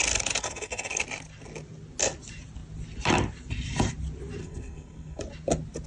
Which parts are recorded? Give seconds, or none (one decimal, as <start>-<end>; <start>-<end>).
0.0-0.4; 1.0-4.4; 5.2-5.9